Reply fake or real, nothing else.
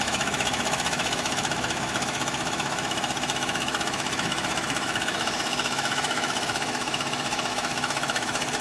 fake